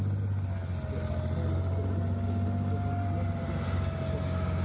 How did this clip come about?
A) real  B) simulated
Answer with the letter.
A